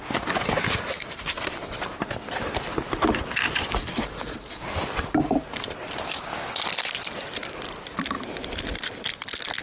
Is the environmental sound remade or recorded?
recorded